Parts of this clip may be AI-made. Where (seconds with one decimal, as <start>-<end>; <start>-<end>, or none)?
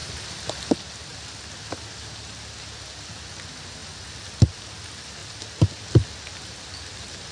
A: 1.1-1.7; 5.2-7.3